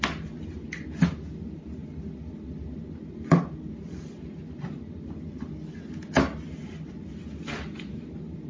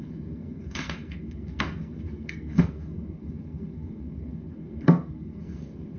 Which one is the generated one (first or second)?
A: second